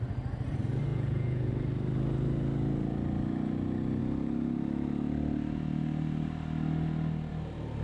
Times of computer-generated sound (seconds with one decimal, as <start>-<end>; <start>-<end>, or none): 0.9-1.5